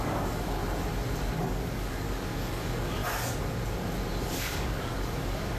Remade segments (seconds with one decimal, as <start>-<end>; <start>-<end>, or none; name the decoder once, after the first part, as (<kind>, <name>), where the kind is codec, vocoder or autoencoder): 0.0-0.6 (codec, DAC); 1.4-3.0; 4.2-5.6